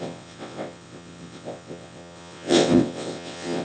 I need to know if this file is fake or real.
fake